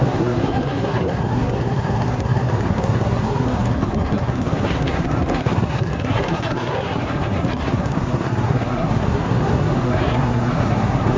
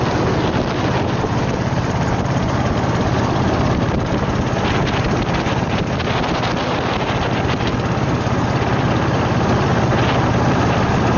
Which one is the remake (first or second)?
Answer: first